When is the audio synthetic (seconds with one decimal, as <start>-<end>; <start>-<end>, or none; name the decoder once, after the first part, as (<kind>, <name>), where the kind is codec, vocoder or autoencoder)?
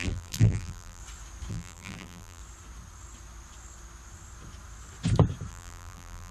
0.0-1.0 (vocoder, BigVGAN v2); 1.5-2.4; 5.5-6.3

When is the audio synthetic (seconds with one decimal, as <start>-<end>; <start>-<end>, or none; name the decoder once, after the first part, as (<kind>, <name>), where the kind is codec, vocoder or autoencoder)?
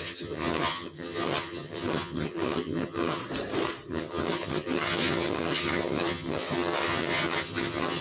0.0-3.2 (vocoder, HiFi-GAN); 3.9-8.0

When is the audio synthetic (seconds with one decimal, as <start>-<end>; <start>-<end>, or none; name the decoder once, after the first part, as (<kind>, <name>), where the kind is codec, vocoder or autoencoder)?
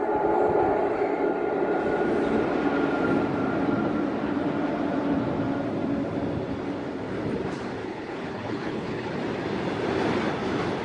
7.8-9.1 (codec, HILCodec)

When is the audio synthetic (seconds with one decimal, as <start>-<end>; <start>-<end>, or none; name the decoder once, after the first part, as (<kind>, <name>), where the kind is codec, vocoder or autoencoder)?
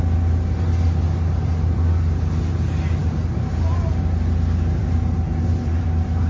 none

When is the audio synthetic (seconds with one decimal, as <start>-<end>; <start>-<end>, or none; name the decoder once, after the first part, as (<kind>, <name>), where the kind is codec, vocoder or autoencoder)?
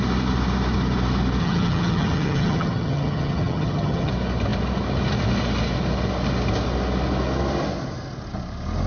1.4-4.1 (vocoder, HiFi-GAN)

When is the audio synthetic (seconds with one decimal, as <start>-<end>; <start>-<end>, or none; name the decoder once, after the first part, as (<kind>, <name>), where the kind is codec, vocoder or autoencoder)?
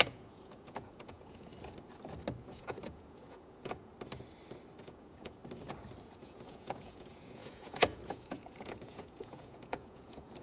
0.0-1.5 (vocoder, Vocos); 2.4-3.9; 4.8-5.4; 6.0-10.4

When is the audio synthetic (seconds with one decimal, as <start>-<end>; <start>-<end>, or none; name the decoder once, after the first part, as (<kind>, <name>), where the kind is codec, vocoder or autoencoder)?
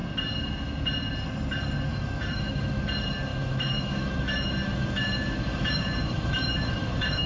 1.9-2.8 (autoencoder, DAC-VAE); 3.3-7.3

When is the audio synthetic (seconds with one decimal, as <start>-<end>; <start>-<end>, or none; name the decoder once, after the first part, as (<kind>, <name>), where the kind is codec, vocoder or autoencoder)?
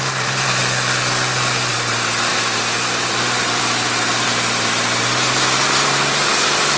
0.0-0.6 (vocoder, BigVGAN v2); 1.7-6.8